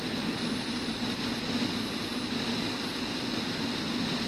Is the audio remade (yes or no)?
no